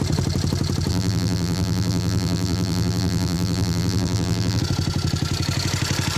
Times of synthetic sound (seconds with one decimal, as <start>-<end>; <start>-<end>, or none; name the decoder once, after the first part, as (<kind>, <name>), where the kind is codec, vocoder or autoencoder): 0.9-4.6 (vocoder, BigVGAN v2)